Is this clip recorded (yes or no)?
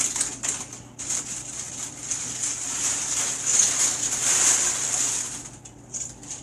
yes